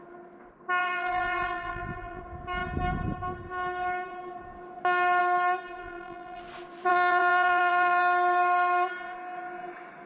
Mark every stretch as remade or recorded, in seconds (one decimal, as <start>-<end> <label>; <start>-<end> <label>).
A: 0.0-0.8 recorded; 0.8-2.2 remade; 2.2-5.8 recorded; 5.8-6.4 remade; 6.4-6.9 recorded; 6.9-8.0 remade; 8.0-10.1 recorded